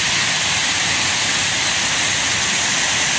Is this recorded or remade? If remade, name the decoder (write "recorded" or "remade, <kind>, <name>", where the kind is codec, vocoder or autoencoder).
recorded